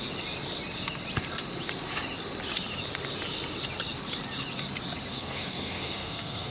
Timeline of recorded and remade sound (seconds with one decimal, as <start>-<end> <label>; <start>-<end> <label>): 0.0-5.1 recorded; 5.1-6.5 remade